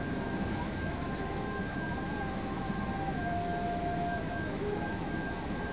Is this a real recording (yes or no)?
no